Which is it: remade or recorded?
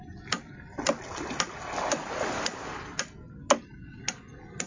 recorded